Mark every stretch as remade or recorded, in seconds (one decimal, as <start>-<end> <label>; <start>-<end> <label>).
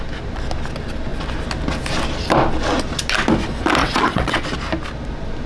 0.0-3.8 recorded; 3.8-4.5 remade; 4.5-5.5 recorded